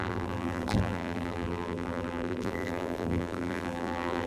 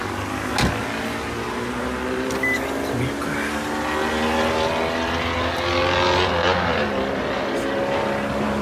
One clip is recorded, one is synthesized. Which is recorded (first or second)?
second